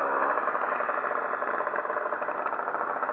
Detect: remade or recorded recorded